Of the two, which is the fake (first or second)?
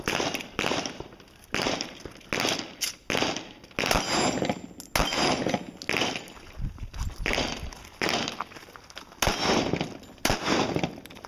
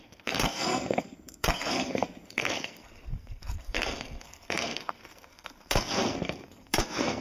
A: second